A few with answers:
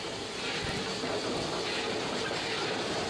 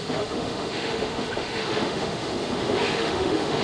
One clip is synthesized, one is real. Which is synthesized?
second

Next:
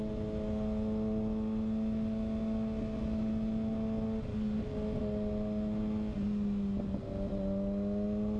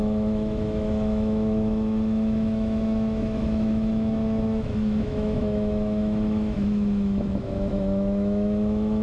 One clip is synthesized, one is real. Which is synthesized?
second